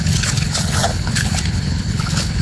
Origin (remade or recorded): remade